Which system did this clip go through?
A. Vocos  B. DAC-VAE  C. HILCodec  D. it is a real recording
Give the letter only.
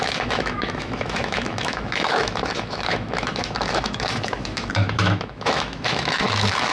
B